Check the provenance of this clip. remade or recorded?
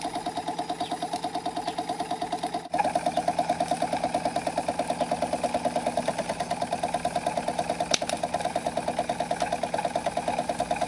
recorded